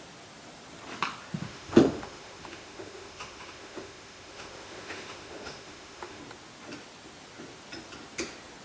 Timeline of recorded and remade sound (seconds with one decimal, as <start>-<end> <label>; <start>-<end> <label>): 0.0-1.4 recorded; 1.4-6.2 remade; 6.2-8.6 recorded